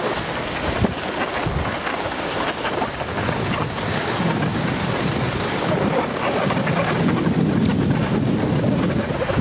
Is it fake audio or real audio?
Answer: real